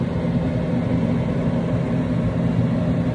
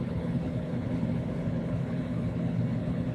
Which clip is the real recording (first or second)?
first